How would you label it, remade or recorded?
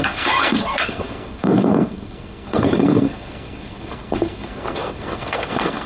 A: remade